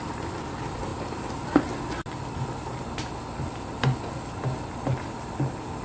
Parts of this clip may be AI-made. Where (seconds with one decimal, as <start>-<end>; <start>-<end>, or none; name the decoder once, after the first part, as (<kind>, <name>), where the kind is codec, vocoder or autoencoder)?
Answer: none